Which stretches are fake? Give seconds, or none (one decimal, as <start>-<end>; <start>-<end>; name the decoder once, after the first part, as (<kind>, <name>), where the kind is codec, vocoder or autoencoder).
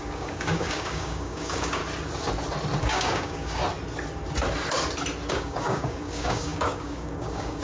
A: 0.0-1.8 (codec, DAC); 2.8-3.6; 5.3-7.6